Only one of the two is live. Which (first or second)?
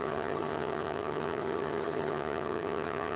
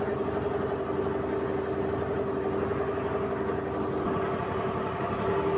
second